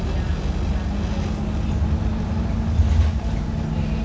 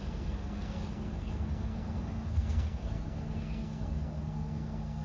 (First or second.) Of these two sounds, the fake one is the second